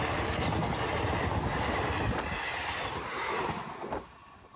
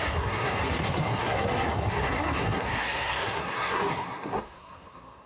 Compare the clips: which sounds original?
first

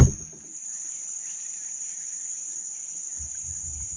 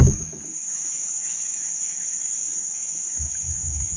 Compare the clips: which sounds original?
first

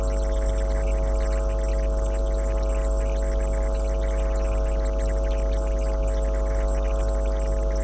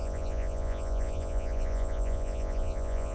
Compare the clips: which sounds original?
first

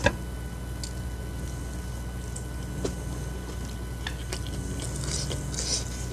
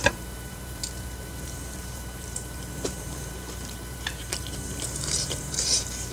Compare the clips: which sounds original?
first